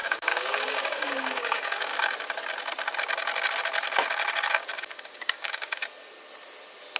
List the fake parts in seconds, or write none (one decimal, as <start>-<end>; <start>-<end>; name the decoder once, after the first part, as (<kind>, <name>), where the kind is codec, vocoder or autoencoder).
0.0-1.9 (codec, DAC); 4.8-5.8